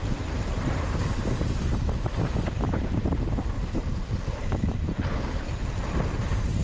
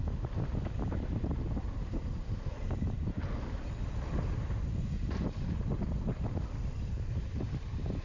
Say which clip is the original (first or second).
second